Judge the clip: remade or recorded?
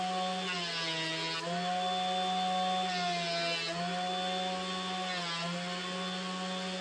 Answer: recorded